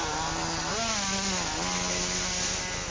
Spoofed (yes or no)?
no